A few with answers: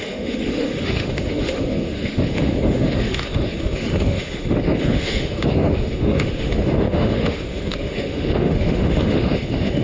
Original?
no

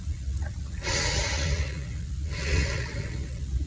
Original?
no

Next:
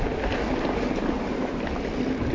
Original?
yes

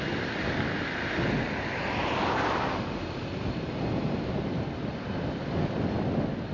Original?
yes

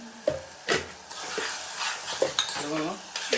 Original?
yes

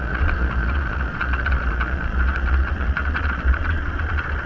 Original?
no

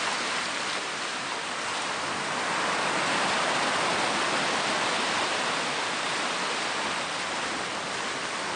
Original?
yes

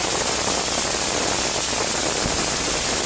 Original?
yes